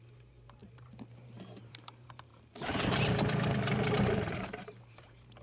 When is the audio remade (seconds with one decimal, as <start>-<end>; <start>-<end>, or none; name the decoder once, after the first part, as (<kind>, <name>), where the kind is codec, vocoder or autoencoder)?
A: 0.0-2.3 (vocoder, BigVGAN v2); 3.2-5.4

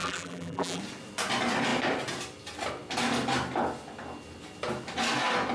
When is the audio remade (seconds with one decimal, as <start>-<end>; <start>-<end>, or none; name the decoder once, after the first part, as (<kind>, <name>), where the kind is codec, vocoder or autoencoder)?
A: 0.0-0.8 (vocoder, BigVGAN v2)

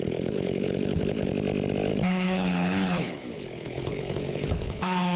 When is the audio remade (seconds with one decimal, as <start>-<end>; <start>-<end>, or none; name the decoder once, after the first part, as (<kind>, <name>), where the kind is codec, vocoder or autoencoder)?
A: 0.0-1.3 (codec, HILCodec); 1.9-5.2

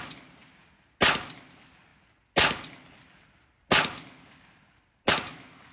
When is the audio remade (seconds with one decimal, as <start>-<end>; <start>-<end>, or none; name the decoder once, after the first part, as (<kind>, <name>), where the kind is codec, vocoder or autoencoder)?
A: none

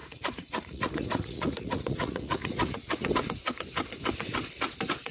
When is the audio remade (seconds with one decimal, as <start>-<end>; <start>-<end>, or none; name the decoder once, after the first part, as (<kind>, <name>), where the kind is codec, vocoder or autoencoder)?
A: 0.0-3.1 (vocoder, Vocos)